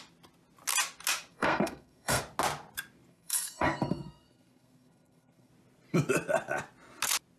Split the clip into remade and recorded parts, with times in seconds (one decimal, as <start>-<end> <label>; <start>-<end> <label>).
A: 0.0-1.3 recorded; 1.3-2.2 remade; 2.2-3.1 recorded; 3.1-5.5 remade; 5.5-7.4 recorded